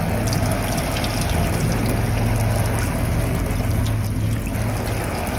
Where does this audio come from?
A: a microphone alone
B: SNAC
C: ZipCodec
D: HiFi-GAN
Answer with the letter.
A